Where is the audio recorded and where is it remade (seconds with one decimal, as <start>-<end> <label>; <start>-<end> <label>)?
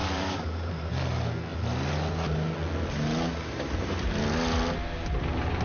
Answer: 0.0-0.9 remade; 0.9-5.6 recorded